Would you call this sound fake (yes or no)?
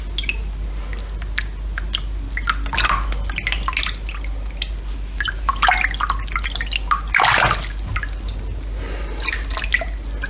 no